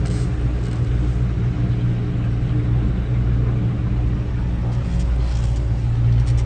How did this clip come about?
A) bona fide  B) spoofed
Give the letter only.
A